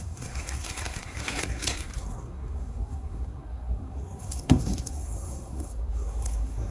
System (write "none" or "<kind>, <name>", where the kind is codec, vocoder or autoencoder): codec, SNAC